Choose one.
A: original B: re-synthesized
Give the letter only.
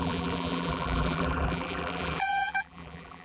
B